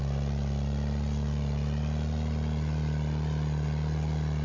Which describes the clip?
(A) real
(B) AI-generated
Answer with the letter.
A